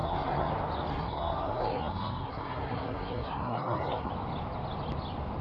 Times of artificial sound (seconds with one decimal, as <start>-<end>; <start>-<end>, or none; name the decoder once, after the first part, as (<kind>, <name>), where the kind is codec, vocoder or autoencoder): 0.0-0.5 (codec, SNAC); 0.9-4.1

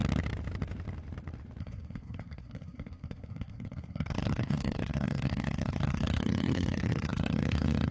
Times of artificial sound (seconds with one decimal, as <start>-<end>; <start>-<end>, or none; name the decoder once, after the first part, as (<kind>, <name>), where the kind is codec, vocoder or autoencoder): 1.6-7.9 (codec, SNAC)

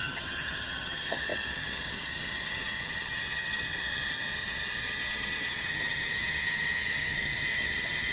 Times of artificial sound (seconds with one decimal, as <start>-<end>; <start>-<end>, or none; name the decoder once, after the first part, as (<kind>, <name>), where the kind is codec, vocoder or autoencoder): 0.0-8.1 (vocoder, HiFi-GAN)

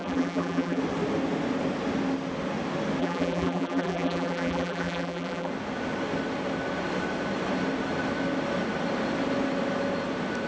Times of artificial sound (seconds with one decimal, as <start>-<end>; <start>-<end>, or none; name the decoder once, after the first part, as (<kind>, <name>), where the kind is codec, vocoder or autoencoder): 0.0-0.8 (vocoder, BigVGAN v2); 3.0-5.5

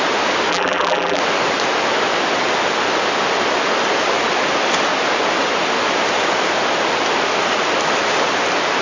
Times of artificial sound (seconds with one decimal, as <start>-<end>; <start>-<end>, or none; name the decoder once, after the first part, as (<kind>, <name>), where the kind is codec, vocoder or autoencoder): 0.5-1.2 (vocoder, BigVGAN v2)

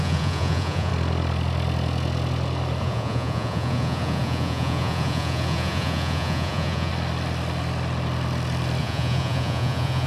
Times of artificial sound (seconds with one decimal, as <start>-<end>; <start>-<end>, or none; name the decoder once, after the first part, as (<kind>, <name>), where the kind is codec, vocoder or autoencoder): 0.0-0.9 (vocoder, Vocos); 2.8-6.9; 8.8-10.1